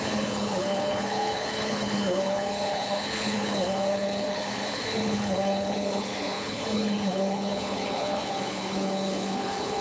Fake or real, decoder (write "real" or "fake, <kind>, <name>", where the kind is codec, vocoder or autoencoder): fake, codec, HILCodec